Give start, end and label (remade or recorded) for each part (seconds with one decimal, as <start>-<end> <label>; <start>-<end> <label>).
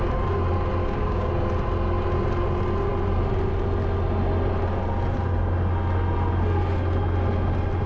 0.0-0.8 recorded; 0.8-1.3 remade; 1.3-7.9 recorded